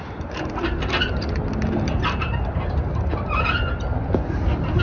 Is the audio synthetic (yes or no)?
no